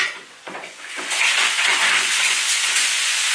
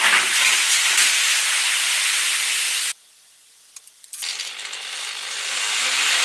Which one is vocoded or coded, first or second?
first